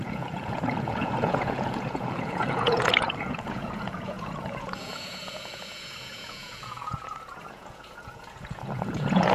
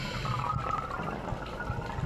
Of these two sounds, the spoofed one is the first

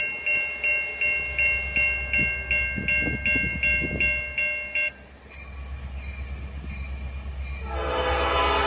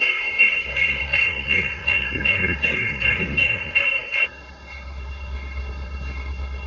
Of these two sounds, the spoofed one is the second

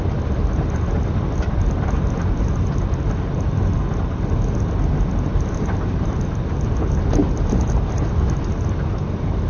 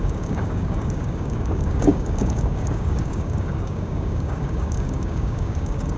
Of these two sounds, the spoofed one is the second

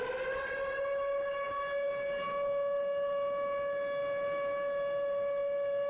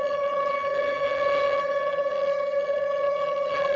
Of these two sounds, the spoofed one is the second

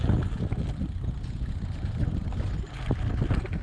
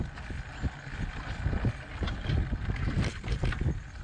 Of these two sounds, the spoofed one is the first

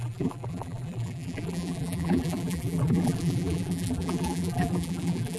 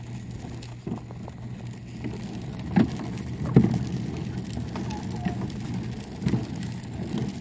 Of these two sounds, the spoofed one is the first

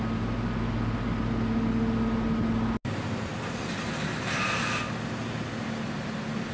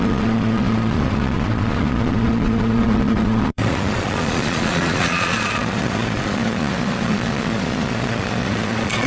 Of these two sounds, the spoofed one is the second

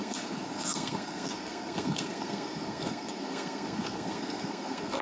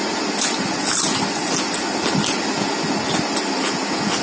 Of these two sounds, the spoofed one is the first